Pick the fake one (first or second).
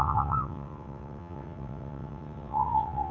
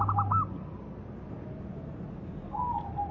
first